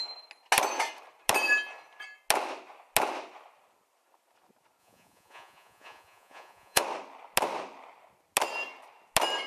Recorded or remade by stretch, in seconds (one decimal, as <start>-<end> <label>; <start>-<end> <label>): 0.0-4.8 recorded; 4.8-6.8 remade; 6.8-9.5 recorded